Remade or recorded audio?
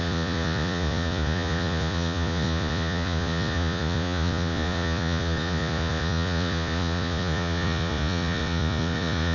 remade